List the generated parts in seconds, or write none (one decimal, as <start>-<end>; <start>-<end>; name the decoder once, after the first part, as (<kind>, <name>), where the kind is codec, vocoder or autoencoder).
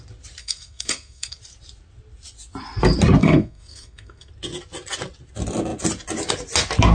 0.4-1.4 (codec, SNAC); 3.2-4.3